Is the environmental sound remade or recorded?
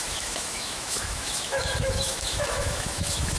remade